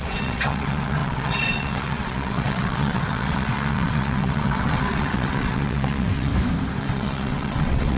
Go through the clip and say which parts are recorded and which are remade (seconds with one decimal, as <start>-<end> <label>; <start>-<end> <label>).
0.0-6.3 remade; 6.3-6.8 recorded; 6.8-8.0 remade